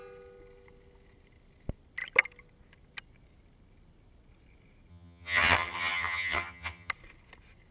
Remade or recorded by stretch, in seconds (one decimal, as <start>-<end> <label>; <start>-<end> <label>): 0.0-4.9 recorded; 4.9-6.9 remade; 6.9-7.7 recorded